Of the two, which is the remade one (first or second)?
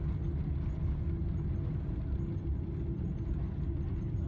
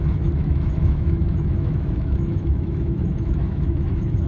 second